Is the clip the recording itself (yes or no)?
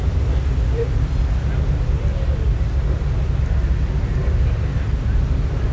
yes